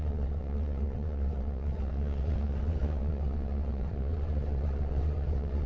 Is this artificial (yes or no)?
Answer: yes